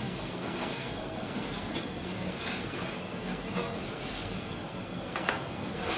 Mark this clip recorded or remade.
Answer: remade